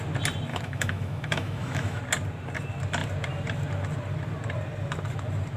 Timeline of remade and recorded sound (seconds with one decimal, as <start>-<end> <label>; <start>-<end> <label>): 0.0-0.5 recorded; 0.5-2.0 remade; 2.0-5.6 recorded